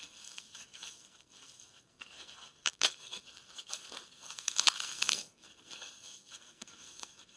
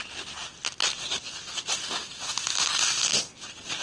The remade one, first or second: first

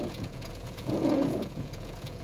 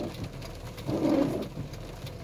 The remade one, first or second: first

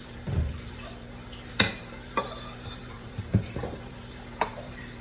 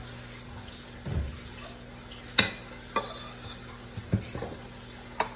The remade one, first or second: first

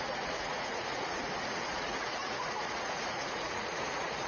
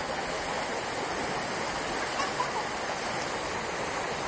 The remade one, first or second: first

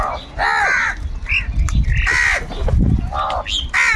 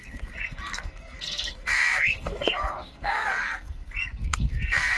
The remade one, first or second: second